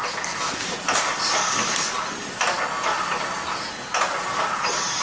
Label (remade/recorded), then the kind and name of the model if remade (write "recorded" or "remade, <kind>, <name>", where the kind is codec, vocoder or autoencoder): recorded